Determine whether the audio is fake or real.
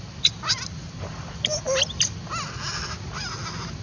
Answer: real